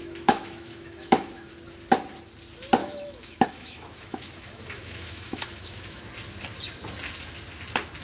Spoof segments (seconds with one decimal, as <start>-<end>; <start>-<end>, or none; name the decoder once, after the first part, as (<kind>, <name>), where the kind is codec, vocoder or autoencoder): 0.0-1.5 (autoencoder, DAC-VAE); 2.8-6.0